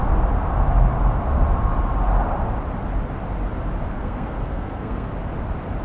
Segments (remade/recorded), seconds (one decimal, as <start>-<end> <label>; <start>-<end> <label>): 0.0-3.9 recorded; 3.9-5.1 remade; 5.1-5.8 recorded